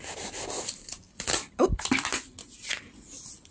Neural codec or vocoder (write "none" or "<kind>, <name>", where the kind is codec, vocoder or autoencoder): none